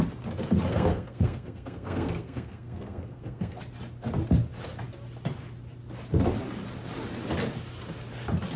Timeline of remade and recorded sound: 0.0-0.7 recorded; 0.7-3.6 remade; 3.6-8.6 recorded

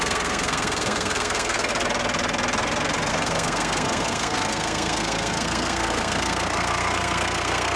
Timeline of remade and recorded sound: 0.0-1.7 remade; 1.7-3.1 recorded; 3.1-7.8 remade

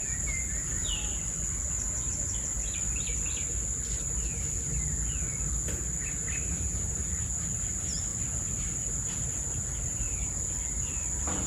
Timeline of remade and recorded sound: 0.0-11.5 recorded

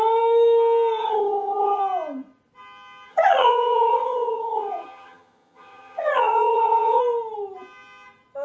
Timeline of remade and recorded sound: 0.0-1.0 recorded; 1.0-1.8 remade; 1.8-3.1 recorded; 3.1-7.0 remade; 7.0-8.4 recorded

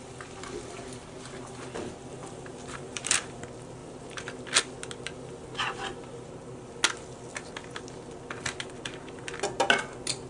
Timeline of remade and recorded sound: 0.0-2.2 recorded; 2.2-3.4 remade; 3.4-10.3 recorded

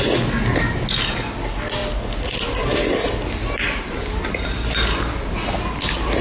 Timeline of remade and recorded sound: 0.0-6.2 recorded